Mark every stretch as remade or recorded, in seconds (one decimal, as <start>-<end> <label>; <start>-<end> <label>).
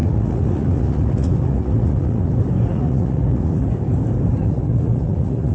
0.0-2.3 remade; 2.3-2.7 recorded; 2.7-3.7 remade; 3.7-4.4 recorded; 4.4-5.5 remade